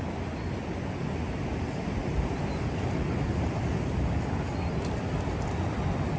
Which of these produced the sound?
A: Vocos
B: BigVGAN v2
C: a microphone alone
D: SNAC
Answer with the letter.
C